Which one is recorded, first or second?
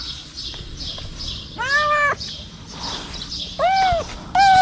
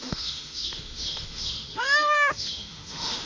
first